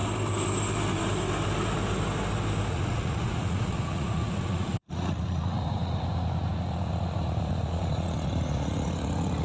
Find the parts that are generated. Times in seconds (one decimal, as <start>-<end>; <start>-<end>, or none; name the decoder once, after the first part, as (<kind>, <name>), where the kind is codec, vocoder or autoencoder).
2.7-9.4 (vocoder, Vocos)